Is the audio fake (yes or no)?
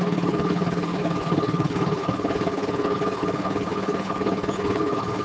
yes